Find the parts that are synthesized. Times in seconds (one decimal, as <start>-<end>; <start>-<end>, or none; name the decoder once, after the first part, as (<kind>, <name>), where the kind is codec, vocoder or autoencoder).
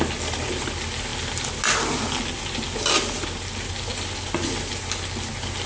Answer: none